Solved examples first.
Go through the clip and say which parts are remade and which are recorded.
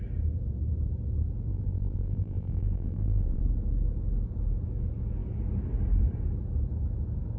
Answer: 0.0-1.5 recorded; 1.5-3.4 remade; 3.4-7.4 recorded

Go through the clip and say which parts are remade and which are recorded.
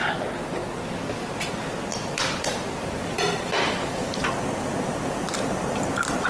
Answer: 0.0-1.9 recorded; 1.9-4.3 remade; 4.3-6.3 recorded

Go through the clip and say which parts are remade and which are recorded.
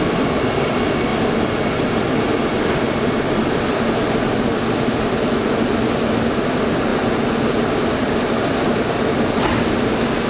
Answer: 0.0-10.3 recorded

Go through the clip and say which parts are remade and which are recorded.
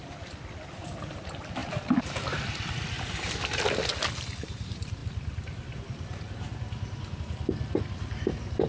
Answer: 0.0-8.7 recorded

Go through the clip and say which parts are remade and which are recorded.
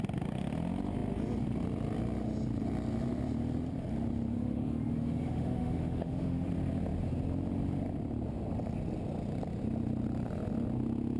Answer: 0.0-4.3 recorded; 4.3-6.5 remade; 6.5-11.2 recorded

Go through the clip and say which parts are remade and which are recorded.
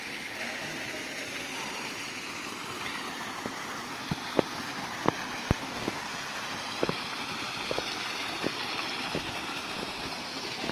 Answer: 0.0-5.6 recorded; 5.6-6.1 remade; 6.1-10.7 recorded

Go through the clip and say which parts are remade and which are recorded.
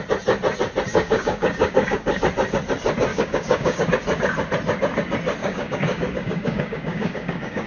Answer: 0.0-0.9 recorded; 0.9-2.2 remade; 2.2-3.1 recorded; 3.1-3.9 remade; 3.9-5.4 recorded; 5.4-7.7 remade